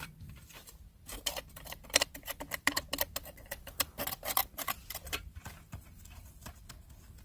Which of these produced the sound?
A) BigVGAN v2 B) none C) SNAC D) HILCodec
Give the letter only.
A